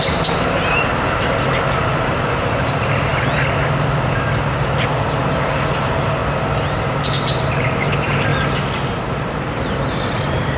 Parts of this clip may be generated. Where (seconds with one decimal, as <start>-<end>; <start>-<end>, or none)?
0.0-3.1; 5.2-6.2; 7.5-8.3; 9.5-10.6